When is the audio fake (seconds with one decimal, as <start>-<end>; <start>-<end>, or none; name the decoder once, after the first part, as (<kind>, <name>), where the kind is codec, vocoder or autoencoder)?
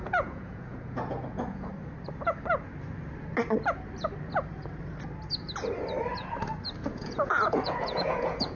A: 0.0-1.7 (vocoder, Vocos); 6.9-8.6